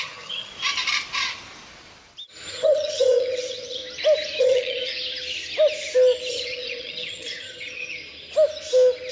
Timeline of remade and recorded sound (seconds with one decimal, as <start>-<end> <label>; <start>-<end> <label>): 0.0-0.5 remade; 0.5-2.5 recorded; 2.5-3.8 remade; 3.8-4.4 recorded; 4.4-4.9 remade; 4.9-6.3 recorded; 6.3-8.0 remade; 8.0-9.1 recorded